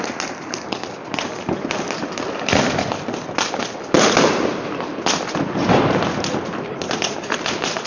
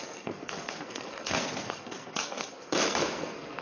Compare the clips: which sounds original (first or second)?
first